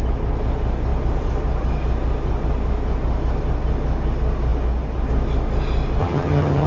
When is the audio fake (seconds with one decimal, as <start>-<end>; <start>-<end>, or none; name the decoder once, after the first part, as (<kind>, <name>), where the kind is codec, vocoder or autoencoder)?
6.0-6.7 (vocoder, HiFi-GAN)